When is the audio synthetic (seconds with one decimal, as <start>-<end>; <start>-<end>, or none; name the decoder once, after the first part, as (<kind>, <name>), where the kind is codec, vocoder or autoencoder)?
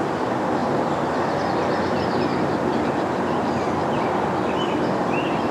none